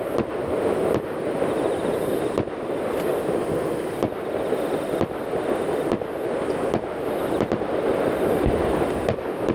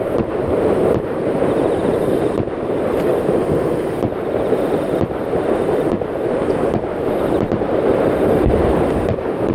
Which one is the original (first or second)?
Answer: first